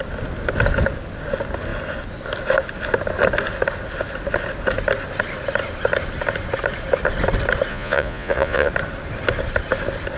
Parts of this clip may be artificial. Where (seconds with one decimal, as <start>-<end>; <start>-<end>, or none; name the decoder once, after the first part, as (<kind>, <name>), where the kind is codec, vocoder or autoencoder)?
7.7-8.7 (vocoder, Vocos)